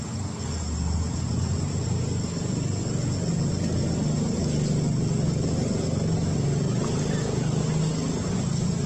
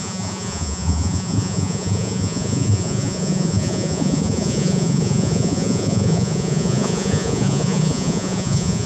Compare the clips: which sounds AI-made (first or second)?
second